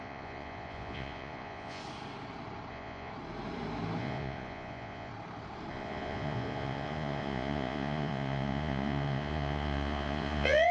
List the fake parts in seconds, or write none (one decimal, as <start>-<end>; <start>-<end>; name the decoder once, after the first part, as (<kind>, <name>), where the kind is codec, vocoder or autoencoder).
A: 0.0-1.8 (vocoder, Vocos); 2.7-3.1; 4.0-5.1; 5.7-10.7